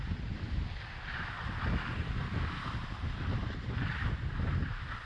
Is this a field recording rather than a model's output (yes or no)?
yes